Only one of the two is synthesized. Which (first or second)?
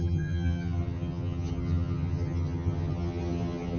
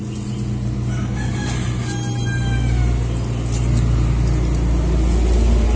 first